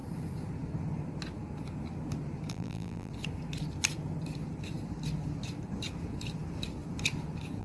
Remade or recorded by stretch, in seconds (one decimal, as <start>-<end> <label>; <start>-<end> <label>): 0.0-2.5 recorded; 2.5-3.1 remade; 3.1-7.6 recorded